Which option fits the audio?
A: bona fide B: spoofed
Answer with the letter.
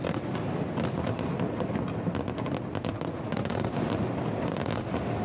A